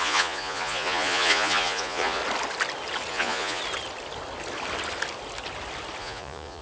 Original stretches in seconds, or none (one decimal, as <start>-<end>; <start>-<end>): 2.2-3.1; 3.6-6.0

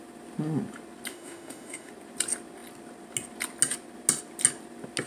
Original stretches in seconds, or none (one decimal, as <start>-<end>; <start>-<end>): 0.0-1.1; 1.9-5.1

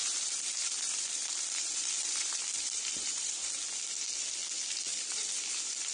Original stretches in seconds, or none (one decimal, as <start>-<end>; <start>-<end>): 3.5-4.9